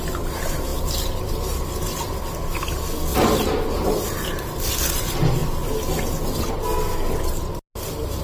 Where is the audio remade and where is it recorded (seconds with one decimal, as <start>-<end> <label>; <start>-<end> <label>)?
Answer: 0.0-3.1 recorded; 3.1-4.7 remade; 4.7-8.2 recorded

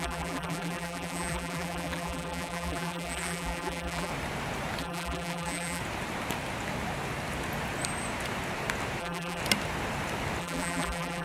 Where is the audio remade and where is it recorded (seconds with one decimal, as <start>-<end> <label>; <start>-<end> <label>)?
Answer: 0.0-4.1 remade; 4.1-4.8 recorded; 4.8-5.8 remade; 5.8-9.0 recorded; 9.0-9.4 remade; 9.4-10.4 recorded; 10.4-11.2 remade

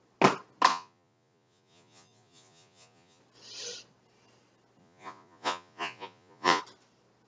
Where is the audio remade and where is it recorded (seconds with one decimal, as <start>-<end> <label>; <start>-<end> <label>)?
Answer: 0.0-0.7 recorded; 0.7-3.2 remade; 3.2-4.8 recorded; 4.8-6.6 remade; 6.6-7.3 recorded

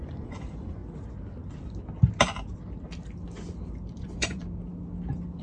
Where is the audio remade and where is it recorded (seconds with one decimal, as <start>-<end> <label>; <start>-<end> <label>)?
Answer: 0.0-0.8 remade; 0.8-4.0 recorded; 4.0-4.4 remade; 4.4-5.4 recorded

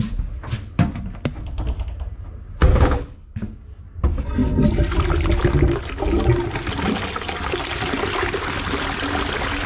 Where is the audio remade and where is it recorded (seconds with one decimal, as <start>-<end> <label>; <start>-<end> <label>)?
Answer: 0.0-2.7 recorded; 2.7-3.4 remade; 3.4-9.7 recorded

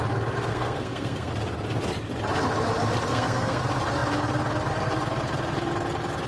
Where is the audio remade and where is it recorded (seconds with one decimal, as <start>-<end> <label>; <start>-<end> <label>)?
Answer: 0.0-0.5 recorded; 0.5-1.3 remade; 1.3-3.1 recorded; 3.1-3.6 remade; 3.6-6.3 recorded

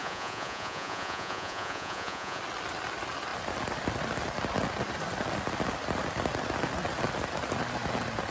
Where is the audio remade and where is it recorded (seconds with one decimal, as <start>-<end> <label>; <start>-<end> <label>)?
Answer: 0.0-2.4 remade; 2.4-8.3 recorded

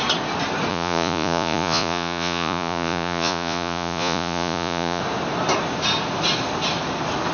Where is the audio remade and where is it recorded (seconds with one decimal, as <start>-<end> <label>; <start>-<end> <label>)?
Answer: 0.0-0.7 recorded; 0.7-5.0 remade; 5.0-7.3 recorded